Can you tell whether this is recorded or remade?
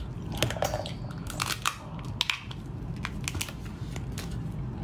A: recorded